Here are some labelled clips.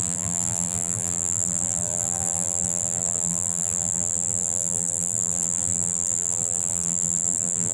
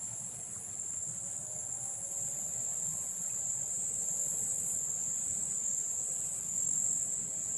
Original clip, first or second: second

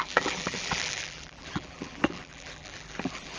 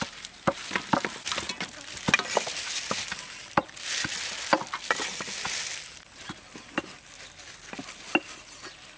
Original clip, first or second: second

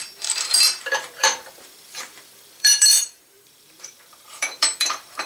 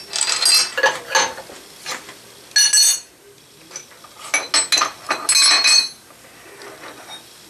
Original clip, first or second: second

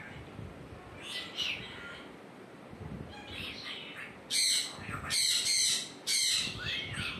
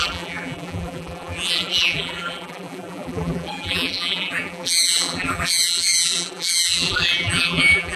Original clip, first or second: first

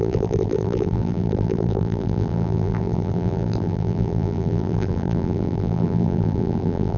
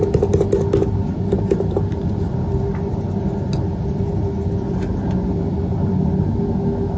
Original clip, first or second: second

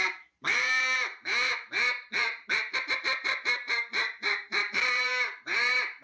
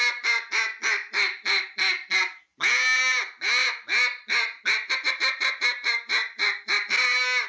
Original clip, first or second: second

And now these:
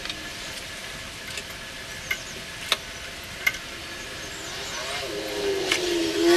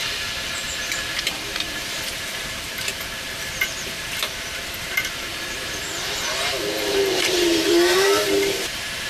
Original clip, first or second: first